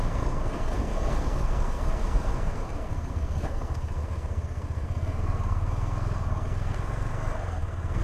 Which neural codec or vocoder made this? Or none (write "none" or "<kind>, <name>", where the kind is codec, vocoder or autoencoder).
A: codec, SNAC